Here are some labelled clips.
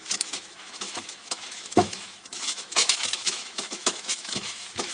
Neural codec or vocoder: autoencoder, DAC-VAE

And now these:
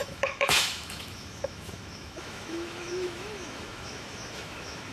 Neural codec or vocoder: autoencoder, DAC-VAE